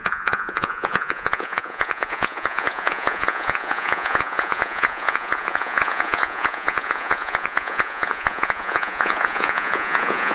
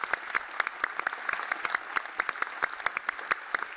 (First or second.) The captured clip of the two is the second